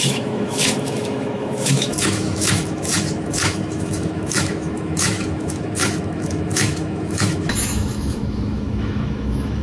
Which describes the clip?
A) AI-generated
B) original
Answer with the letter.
A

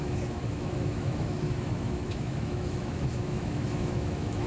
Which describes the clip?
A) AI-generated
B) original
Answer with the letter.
A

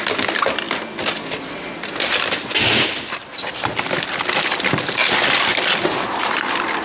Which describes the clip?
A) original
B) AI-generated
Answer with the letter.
A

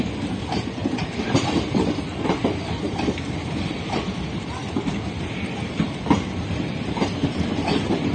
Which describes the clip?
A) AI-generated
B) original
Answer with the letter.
A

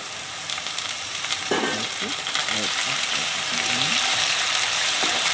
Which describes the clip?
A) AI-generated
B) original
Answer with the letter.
A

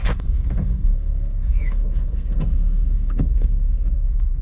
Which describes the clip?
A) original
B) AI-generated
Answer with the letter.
B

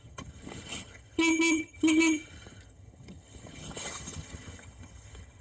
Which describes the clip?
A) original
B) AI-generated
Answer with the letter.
B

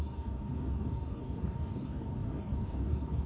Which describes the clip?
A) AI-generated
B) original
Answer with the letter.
A